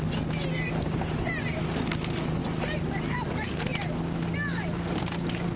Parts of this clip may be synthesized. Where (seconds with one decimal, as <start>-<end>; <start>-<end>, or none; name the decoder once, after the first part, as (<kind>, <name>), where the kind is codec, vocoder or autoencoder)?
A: 2.4-3.3 (vocoder, BigVGAN v2)

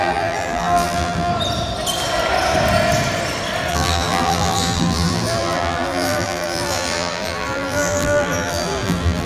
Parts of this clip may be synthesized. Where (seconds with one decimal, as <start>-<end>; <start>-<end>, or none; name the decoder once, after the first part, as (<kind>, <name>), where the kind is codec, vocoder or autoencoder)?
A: 0.0-1.3 (vocoder, BigVGAN v2); 3.7-9.3

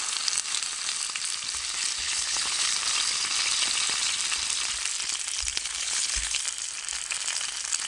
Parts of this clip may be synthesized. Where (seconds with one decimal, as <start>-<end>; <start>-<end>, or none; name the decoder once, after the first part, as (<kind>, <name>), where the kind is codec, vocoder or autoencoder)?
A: 2.0-2.7 (codec, HILCodec); 5.5-6.4